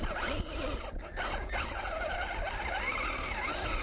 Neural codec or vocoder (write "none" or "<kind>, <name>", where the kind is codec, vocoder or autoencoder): none